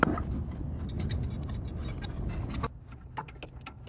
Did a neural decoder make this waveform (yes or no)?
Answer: no